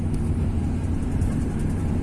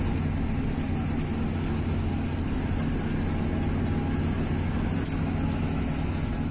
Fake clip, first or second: first